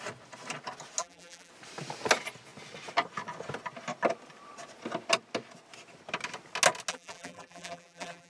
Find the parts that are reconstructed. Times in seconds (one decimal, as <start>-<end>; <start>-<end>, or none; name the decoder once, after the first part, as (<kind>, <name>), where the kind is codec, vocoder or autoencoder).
1.0-1.5 (vocoder, BigVGAN v2); 6.9-8.3